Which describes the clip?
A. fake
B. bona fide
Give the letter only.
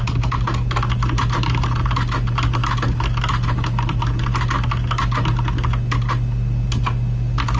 B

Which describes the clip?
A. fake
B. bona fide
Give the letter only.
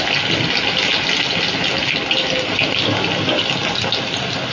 B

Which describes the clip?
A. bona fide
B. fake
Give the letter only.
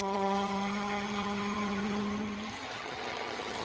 B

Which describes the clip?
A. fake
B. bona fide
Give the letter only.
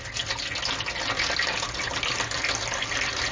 B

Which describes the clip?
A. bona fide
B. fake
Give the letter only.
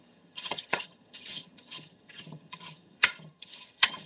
B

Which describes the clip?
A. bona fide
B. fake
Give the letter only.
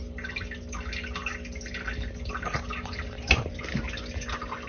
A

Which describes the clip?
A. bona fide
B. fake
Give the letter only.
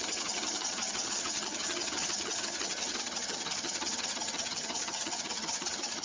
B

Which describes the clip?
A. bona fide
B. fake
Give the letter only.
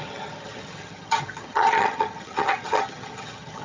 B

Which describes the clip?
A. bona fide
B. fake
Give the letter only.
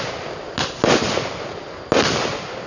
A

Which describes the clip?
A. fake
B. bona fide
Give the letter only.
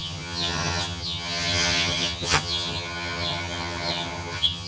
A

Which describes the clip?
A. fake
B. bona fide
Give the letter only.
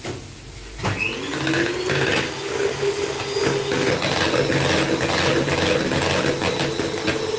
B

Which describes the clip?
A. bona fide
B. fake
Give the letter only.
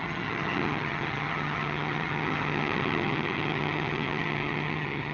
B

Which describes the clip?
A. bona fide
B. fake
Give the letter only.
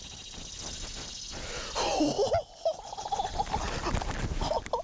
A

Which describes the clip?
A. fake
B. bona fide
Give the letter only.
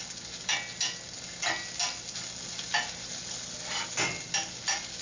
B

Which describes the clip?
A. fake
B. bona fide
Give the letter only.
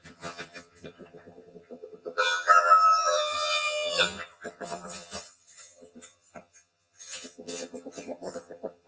A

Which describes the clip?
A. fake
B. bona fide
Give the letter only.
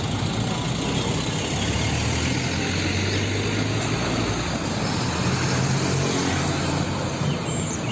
B